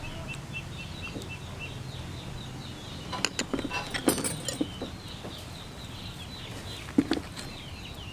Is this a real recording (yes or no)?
yes